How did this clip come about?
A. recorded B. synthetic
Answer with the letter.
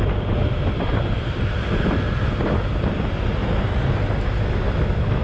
A